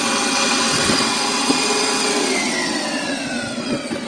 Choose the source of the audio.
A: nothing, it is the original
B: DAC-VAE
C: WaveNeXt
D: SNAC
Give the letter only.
C